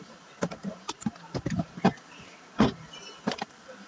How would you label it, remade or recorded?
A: remade